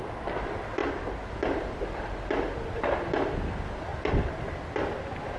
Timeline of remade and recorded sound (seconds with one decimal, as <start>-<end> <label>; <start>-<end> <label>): 0.0-5.4 recorded